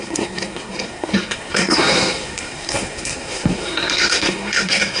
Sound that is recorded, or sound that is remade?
remade